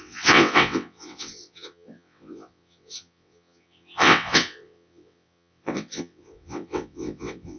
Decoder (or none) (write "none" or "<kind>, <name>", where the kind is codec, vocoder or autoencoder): vocoder, WaveNeXt